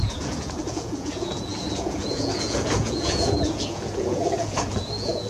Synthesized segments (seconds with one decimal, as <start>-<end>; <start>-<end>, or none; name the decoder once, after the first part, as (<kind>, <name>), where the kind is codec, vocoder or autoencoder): 0.0-5.3 (vocoder, Vocos)